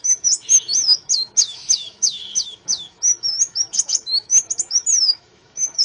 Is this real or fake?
fake